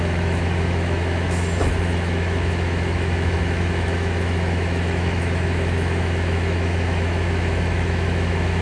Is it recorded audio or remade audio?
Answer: remade